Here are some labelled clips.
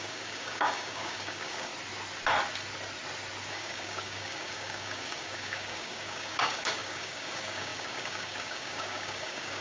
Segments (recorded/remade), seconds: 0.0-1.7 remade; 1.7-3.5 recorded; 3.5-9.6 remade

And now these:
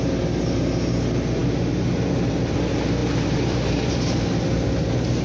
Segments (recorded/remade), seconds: 0.0-5.2 recorded